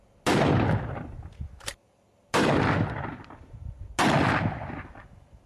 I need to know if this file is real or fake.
real